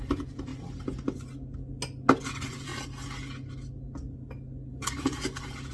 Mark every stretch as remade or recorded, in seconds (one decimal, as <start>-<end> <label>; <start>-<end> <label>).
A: 0.0-0.5 remade; 0.5-2.2 recorded; 2.2-2.7 remade; 2.7-4.7 recorded; 4.7-5.7 remade